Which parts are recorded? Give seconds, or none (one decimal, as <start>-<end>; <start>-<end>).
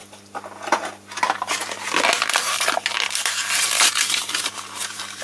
0.0-1.2; 1.6-3.4